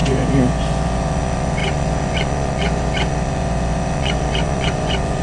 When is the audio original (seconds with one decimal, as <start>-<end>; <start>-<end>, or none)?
none